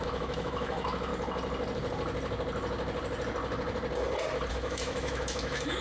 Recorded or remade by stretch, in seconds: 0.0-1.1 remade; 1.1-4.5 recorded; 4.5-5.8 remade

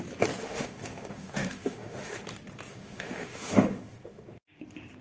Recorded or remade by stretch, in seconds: 0.0-0.4 recorded; 0.4-2.2 remade; 2.2-2.7 recorded; 2.7-4.6 remade; 4.6-5.0 recorded